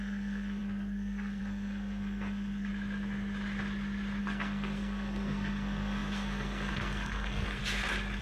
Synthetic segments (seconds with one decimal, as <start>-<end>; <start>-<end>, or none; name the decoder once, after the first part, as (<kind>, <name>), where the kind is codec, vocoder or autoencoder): 0.0-2.7 (codec, SNAC); 4.2-7.6